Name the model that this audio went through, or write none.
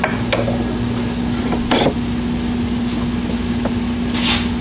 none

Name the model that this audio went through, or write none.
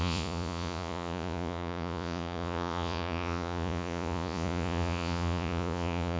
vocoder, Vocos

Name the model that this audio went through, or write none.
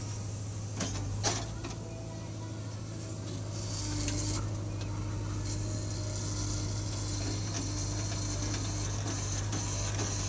none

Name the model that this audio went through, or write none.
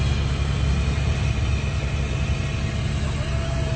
none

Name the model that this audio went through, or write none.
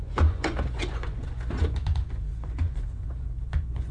vocoder, Vocos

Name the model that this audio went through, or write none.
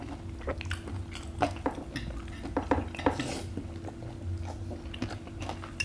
none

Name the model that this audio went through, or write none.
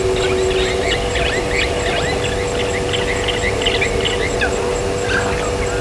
none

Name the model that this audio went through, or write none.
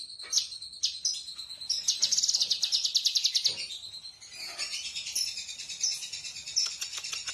none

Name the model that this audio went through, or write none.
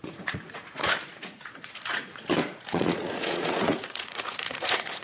vocoder, Vocos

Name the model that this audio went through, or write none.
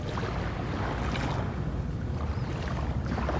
none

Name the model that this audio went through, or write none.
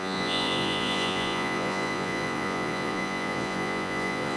vocoder, Vocos